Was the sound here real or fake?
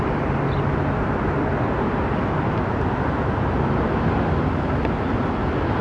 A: real